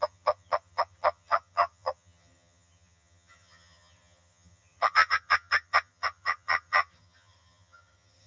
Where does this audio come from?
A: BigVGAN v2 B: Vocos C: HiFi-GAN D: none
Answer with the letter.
C